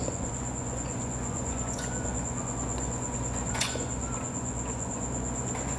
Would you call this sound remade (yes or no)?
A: yes